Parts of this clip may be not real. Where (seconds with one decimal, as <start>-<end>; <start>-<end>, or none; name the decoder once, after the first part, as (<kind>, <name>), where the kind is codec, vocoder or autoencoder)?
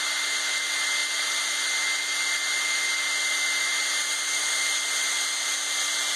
none